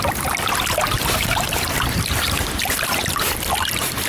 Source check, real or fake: real